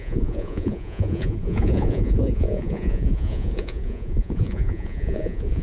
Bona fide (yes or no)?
no